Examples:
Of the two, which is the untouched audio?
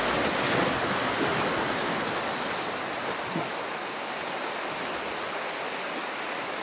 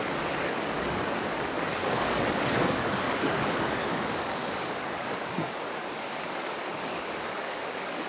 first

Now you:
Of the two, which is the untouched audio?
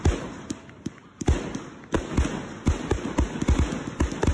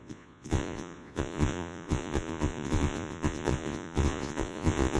first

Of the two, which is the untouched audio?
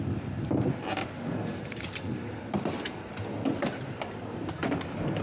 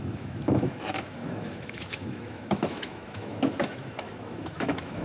first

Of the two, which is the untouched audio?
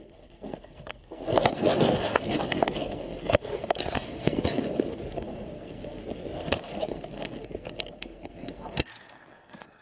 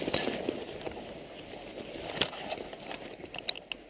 second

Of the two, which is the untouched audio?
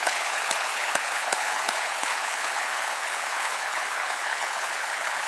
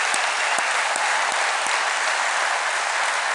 second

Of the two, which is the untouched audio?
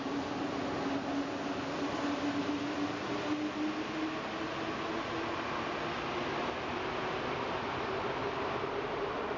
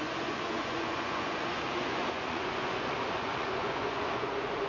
first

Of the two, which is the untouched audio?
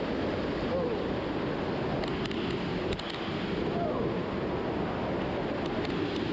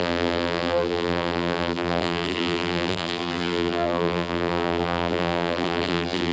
first